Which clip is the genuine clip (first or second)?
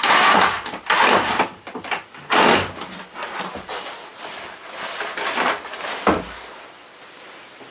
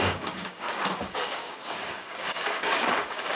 first